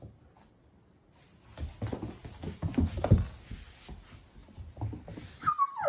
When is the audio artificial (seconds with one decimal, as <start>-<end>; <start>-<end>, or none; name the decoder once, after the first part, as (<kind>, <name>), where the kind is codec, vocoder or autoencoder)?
none